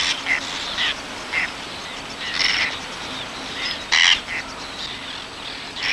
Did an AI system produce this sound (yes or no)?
no